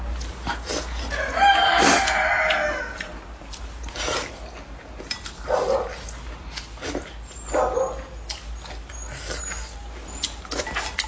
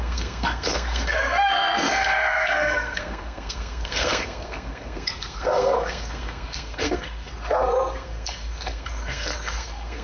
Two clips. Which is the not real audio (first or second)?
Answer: second